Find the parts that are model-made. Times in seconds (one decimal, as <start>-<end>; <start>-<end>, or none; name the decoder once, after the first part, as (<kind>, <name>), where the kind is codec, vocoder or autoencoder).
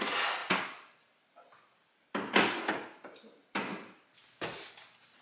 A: none